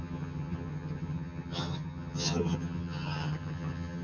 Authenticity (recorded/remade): remade